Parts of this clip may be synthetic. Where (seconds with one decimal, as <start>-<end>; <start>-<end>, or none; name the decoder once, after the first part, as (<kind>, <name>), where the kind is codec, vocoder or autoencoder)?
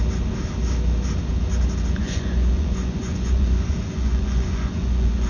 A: 2.0-5.3 (vocoder, Vocos)